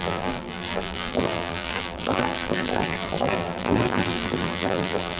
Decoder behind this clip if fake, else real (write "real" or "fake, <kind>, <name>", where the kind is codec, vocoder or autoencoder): fake, vocoder, BigVGAN v2